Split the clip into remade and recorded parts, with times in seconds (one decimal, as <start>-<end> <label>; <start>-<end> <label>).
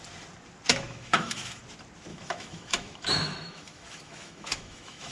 0.0-0.7 recorded; 0.7-1.6 remade; 1.6-2.1 recorded; 2.1-5.1 remade